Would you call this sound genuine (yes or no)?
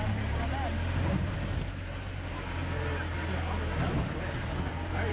yes